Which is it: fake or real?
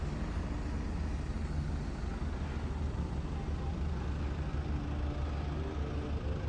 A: real